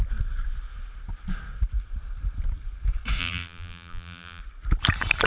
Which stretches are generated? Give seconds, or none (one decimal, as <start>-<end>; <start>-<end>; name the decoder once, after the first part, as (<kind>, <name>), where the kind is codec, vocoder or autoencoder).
3.2-4.4 (vocoder, BigVGAN v2)